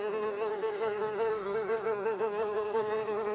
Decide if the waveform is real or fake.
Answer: fake